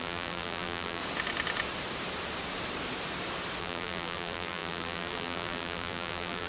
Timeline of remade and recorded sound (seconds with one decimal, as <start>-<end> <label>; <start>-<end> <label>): 0.0-1.0 remade; 1.0-3.6 recorded; 3.6-6.5 remade